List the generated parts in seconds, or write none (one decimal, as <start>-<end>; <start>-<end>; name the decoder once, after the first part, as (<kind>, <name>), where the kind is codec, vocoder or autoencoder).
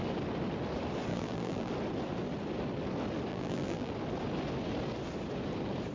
1.1-1.7 (vocoder, BigVGAN v2); 3.3-3.9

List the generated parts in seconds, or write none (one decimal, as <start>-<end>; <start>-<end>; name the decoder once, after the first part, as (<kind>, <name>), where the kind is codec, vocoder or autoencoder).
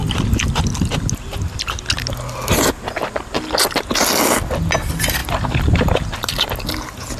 5.2-6.4 (vocoder, BigVGAN v2)